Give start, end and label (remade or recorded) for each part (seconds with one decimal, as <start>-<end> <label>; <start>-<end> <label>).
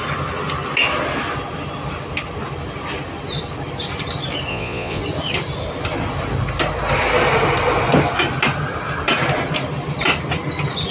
0.0-4.5 recorded; 4.5-5.0 remade; 5.0-10.9 recorded